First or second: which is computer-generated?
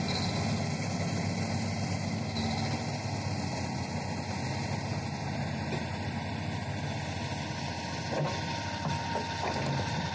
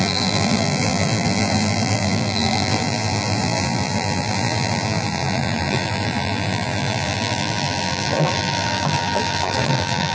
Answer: second